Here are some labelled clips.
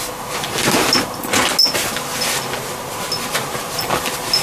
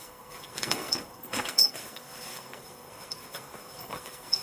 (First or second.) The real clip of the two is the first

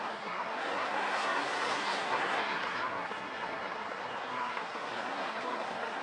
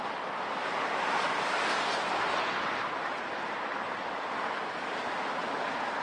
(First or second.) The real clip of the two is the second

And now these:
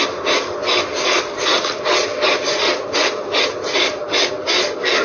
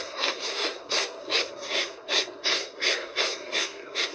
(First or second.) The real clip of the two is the first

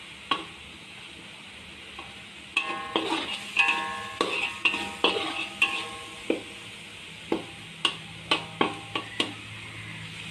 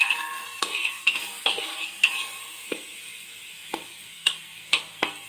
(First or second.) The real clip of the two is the first